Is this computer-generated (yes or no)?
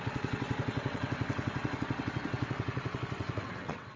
yes